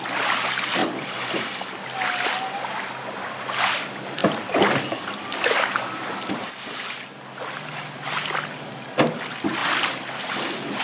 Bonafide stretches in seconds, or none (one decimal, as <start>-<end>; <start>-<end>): 0.0-0.8; 1.4-4.2; 6.6-9.6